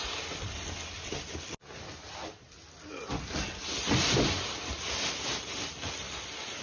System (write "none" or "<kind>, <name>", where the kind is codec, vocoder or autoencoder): none